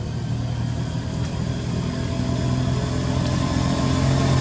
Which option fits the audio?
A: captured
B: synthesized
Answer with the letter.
A